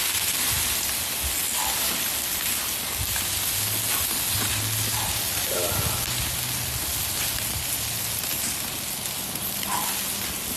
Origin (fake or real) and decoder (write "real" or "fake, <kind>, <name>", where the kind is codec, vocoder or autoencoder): real